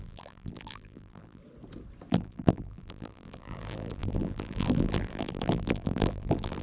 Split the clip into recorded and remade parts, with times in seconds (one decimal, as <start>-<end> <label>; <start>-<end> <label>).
0.0-1.4 remade; 1.4-2.1 recorded; 2.1-6.6 remade